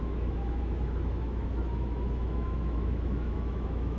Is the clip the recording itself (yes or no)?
no